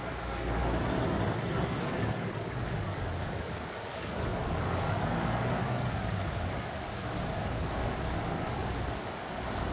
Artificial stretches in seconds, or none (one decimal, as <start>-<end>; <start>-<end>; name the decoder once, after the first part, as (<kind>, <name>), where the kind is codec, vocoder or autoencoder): 0.0-0.6 (codec, DAC); 1.8-9.7